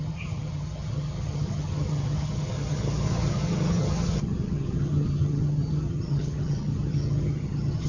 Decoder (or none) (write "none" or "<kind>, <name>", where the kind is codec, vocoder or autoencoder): vocoder, HiFi-GAN